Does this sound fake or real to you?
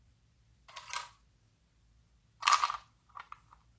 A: real